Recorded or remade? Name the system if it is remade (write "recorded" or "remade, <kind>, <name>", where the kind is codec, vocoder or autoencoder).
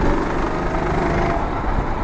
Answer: recorded